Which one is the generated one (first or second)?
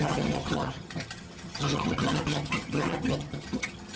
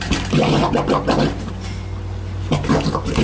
first